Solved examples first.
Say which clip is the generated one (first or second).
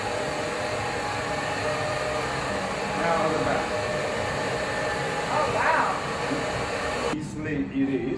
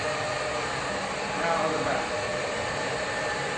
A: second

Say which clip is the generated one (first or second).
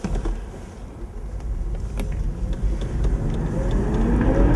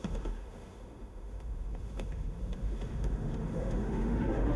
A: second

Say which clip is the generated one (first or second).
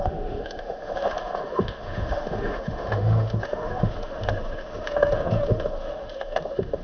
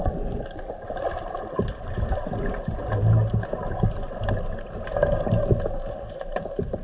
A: first